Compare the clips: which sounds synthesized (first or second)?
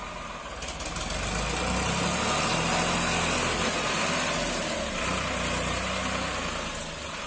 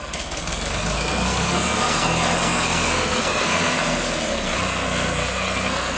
second